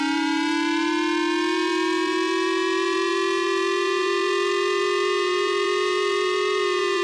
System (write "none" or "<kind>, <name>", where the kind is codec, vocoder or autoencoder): vocoder, BigVGAN v2